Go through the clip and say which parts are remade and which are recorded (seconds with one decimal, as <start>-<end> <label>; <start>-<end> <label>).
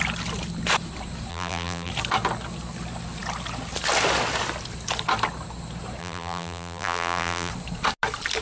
0.0-1.3 recorded; 1.3-1.9 remade; 1.9-6.0 recorded; 6.0-7.5 remade; 7.5-8.4 recorded